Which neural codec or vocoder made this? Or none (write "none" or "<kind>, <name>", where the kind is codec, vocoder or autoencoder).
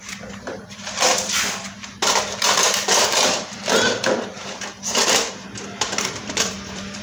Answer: vocoder, BigVGAN v2